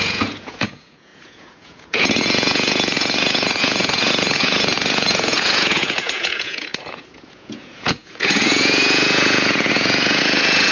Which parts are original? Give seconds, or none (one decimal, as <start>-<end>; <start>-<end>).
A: none